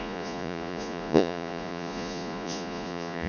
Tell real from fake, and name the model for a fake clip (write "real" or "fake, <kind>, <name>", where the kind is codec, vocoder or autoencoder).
fake, vocoder, Vocos